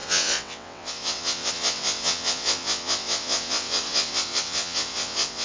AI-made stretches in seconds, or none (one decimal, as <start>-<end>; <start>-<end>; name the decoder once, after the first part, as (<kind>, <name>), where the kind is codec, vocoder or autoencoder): 0.0-5.4 (vocoder, WaveNeXt)